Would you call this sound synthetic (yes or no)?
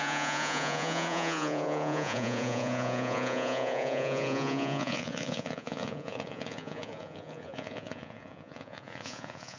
yes